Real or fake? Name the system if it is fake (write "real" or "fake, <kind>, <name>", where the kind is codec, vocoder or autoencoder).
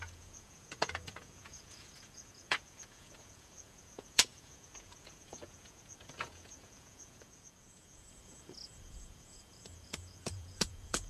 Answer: fake, vocoder, Vocos